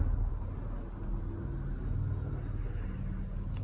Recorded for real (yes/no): yes